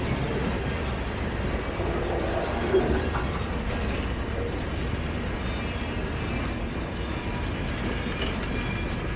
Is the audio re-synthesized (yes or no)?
no